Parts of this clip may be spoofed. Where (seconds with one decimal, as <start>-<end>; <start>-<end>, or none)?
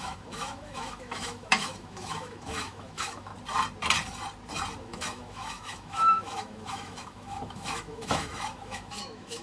0.0-3.3; 4.8-9.4